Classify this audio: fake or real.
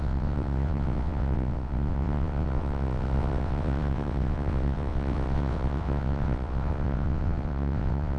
fake